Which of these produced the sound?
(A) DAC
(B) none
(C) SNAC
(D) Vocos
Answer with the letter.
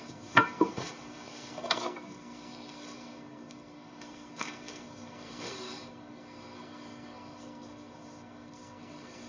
C